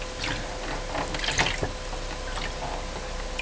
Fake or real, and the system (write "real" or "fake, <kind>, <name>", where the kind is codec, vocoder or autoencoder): real